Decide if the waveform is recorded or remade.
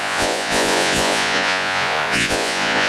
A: remade